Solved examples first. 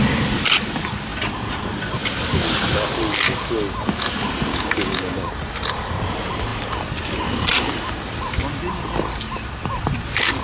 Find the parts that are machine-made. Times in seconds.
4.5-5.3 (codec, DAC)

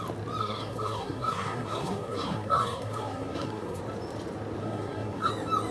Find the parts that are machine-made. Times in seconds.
0.4-3.8 (codec, SNAC); 4.6-5.3

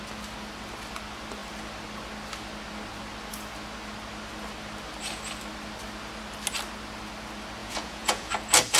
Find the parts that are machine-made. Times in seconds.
7.6-8.3 (vocoder, Vocos)

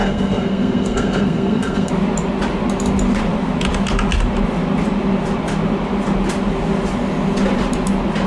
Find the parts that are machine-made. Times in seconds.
0.0-1.9 (codec, SNAC)

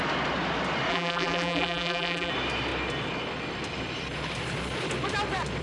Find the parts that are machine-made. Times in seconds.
0.9-2.3 (vocoder, BigVGAN v2)

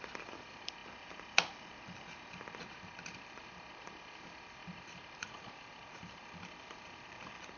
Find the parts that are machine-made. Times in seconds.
0.0-0.8 (vocoder, BigVGAN v2); 2.6-7.6

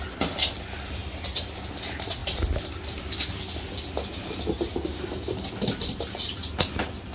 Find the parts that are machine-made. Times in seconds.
1.0-1.7 (vocoder, BigVGAN v2)

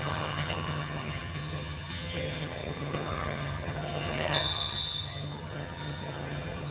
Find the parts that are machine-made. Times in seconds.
0.0-6.7 (vocoder, HiFi-GAN)